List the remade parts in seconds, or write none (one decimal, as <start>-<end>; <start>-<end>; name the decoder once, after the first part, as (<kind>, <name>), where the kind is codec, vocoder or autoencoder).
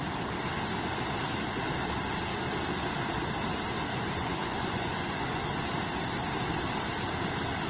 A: 3.9-5.4 (vocoder, Vocos)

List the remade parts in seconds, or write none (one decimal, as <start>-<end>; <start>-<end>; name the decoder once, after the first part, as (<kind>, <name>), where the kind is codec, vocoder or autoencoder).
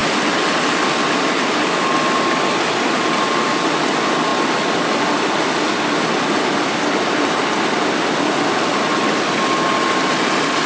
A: none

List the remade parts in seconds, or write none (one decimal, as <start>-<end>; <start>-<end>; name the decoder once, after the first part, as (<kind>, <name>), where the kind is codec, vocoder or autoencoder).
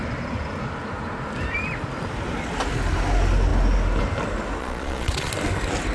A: 4.6-5.3 (vocoder, Vocos)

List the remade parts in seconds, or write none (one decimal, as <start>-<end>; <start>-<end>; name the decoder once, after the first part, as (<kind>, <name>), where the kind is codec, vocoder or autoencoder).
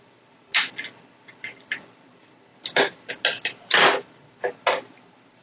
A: none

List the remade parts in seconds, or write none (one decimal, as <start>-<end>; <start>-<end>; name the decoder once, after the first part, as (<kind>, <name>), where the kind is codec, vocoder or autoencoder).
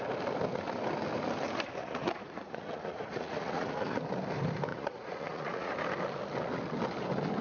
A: 1.8-4.0 (vocoder, Vocos); 4.7-5.7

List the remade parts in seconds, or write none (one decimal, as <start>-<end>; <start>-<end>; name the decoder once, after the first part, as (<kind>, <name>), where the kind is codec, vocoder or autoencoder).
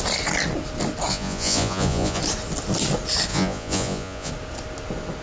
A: 1.1-2.2 (vocoder, Vocos); 3.3-4.3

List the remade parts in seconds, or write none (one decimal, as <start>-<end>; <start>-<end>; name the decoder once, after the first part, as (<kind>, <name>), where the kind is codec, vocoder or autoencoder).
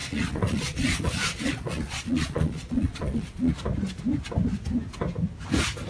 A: 0.0-3.5 (vocoder, Vocos)